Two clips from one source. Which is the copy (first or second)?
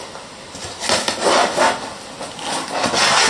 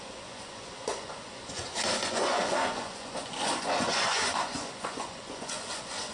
second